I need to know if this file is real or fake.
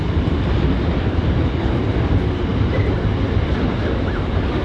real